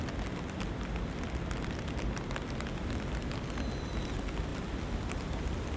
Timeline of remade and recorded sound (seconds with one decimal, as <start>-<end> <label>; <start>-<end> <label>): 0.0-5.8 recorded